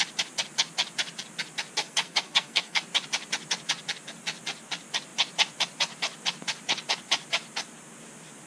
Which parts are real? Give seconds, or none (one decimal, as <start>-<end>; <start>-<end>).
0.0-1.8; 2.8-8.5